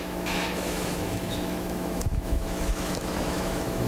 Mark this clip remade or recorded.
remade